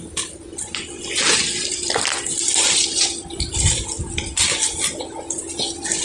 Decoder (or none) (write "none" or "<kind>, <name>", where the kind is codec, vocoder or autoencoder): none